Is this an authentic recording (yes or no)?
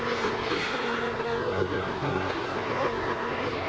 no